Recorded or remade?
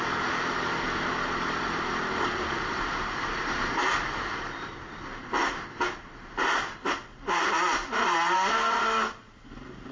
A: recorded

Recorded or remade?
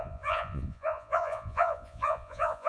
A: remade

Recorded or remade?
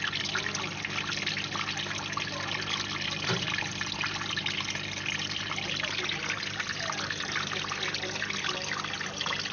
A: recorded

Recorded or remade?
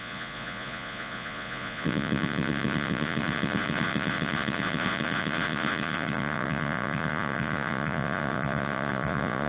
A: remade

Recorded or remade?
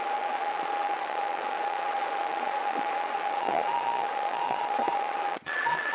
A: remade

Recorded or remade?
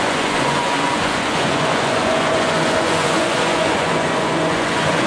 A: remade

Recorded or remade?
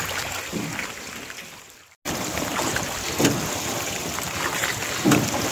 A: recorded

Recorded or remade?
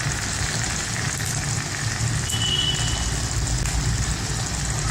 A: recorded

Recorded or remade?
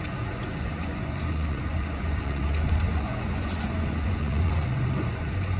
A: remade